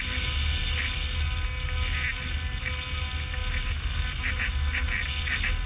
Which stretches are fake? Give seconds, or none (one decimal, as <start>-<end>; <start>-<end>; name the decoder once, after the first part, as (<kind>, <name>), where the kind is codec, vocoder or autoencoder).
none